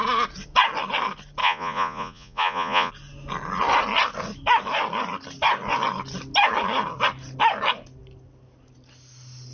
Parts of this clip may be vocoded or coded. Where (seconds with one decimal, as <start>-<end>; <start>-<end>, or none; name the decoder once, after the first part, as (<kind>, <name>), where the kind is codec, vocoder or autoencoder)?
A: 1.4-2.9 (vocoder, Vocos)